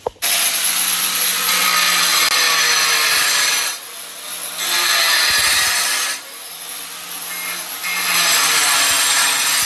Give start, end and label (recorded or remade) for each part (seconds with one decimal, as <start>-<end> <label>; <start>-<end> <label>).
0.0-9.7 recorded